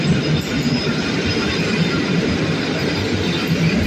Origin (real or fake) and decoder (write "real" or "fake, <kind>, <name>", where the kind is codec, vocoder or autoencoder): fake, vocoder, BigVGAN v2